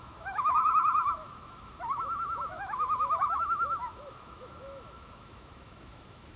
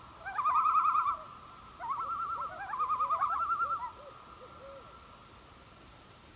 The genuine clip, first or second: second